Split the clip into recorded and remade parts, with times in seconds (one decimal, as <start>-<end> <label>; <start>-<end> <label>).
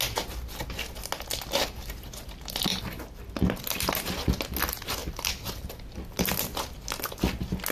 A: 0.0-2.7 recorded; 2.7-3.6 remade; 3.6-5.0 recorded; 5.0-6.2 remade; 6.2-7.7 recorded